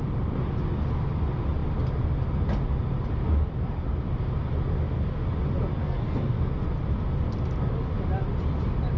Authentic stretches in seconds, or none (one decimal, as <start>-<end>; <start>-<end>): 0.0-5.8; 6.5-9.0